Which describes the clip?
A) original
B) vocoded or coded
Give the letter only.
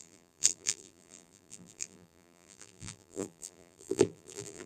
B